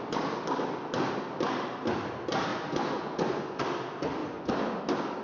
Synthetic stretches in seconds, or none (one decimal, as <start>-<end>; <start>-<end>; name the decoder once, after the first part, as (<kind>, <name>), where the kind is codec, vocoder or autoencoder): 2.5-3.6 (vocoder, Vocos); 4.2-4.8